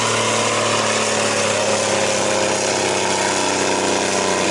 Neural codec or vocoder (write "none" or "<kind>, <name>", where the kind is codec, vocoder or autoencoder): none